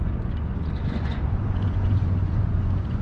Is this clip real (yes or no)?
no